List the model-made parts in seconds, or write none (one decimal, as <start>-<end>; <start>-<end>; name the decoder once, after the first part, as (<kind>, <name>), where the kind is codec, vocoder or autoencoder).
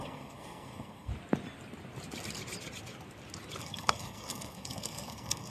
0.0-1.1 (codec, SNAC); 3.6-5.5